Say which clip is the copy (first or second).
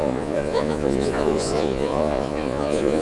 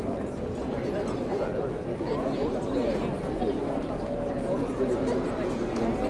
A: first